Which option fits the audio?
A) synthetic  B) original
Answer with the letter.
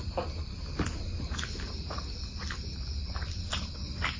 B